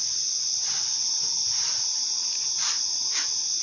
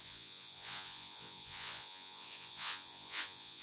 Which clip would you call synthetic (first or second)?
second